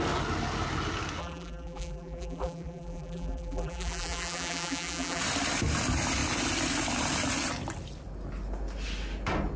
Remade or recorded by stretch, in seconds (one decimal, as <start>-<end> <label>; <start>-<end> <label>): 0.0-1.2 recorded; 1.2-5.2 remade; 5.2-9.6 recorded